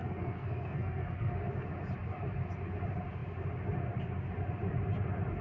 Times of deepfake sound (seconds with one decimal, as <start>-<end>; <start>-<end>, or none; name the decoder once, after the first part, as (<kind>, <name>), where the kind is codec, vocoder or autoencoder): 0.0-1.3 (codec, SNAC)